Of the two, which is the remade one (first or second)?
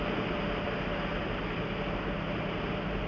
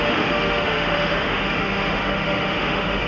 second